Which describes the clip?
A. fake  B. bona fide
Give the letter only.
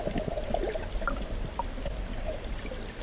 B